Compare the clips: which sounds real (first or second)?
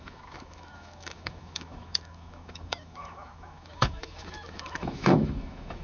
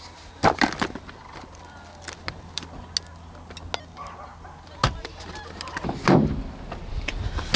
second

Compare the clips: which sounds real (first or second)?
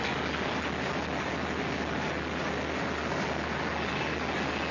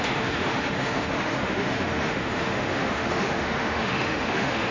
first